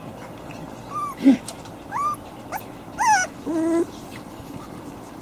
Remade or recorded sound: recorded